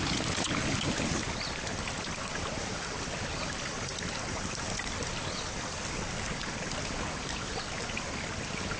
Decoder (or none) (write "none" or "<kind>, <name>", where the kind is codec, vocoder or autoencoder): vocoder, BigVGAN v2